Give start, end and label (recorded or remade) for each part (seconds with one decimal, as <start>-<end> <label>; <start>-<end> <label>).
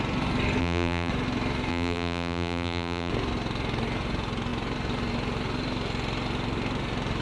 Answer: 0.0-0.6 recorded; 0.6-1.1 remade; 1.1-1.7 recorded; 1.7-3.1 remade; 3.1-7.2 recorded